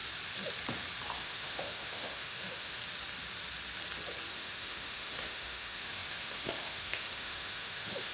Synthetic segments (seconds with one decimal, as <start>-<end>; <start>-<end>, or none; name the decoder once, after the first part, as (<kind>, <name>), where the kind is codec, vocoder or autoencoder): 1.2-2.8 (autoencoder, DAC-VAE); 4.3-8.1